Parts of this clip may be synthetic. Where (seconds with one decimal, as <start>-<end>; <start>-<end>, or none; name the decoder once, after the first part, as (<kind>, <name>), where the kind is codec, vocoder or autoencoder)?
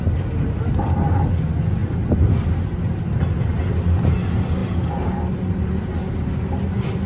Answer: none